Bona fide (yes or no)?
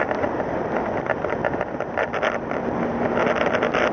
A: yes